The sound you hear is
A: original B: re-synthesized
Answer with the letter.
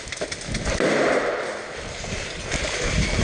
A